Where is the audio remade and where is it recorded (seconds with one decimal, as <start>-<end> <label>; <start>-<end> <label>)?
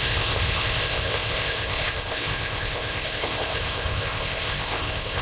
0.0-5.2 remade